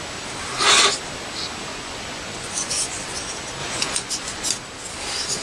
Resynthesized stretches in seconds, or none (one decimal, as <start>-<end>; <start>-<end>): 1.7-3.2; 3.6-4.5